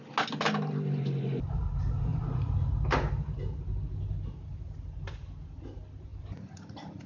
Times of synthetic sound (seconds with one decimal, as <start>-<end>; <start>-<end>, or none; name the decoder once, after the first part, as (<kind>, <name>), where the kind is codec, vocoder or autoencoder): 2.1-3.4 (vocoder, BigVGAN v2)